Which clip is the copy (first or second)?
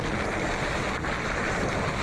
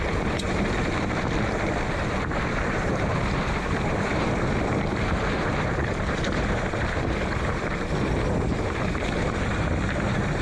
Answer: second